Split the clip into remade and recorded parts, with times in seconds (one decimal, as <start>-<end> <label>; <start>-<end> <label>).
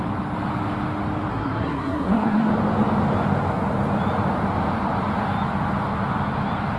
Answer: 0.0-1.3 recorded; 1.3-2.5 remade; 2.5-6.8 recorded